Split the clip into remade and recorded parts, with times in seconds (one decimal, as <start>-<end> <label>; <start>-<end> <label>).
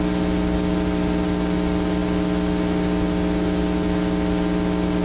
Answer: 0.0-5.0 recorded